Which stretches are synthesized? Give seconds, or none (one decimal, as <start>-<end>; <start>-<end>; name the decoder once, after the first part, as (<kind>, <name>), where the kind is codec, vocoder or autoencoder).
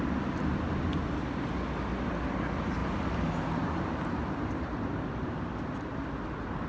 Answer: 2.8-5.4 (vocoder, BigVGAN v2)